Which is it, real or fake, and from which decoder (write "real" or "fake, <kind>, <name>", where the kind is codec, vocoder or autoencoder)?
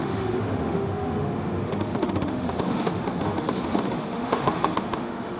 fake, autoencoder, DAC-VAE